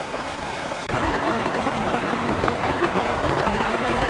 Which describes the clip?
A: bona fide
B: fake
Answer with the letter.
B